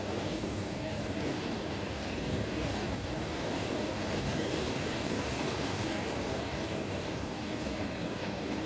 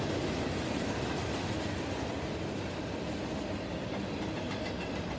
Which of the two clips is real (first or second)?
second